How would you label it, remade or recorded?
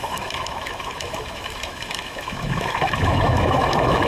remade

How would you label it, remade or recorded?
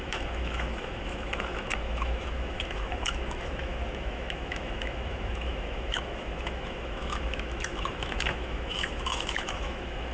remade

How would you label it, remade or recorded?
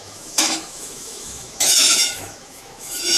remade